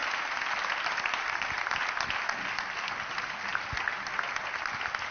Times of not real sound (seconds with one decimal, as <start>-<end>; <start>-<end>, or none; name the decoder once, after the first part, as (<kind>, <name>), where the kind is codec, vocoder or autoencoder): none